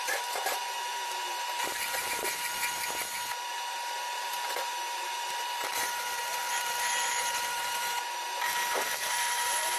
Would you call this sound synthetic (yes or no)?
yes